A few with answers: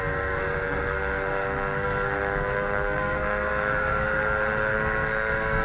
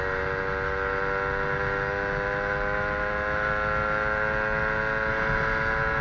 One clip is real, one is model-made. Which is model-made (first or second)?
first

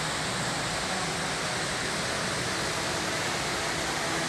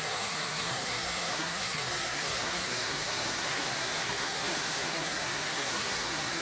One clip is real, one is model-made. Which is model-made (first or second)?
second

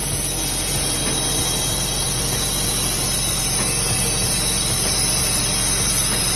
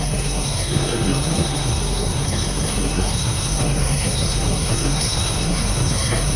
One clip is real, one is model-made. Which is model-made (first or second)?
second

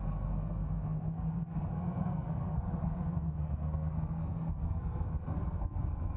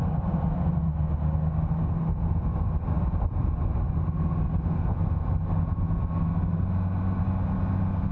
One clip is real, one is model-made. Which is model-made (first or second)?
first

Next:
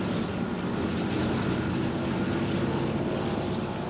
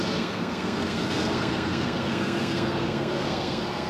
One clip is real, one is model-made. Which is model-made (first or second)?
second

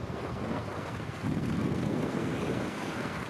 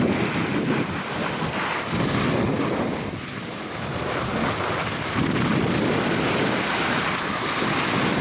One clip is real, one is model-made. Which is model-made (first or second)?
first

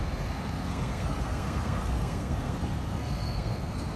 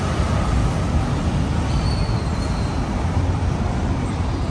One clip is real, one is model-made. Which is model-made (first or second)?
first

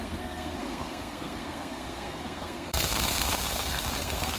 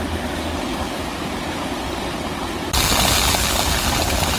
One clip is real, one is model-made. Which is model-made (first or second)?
first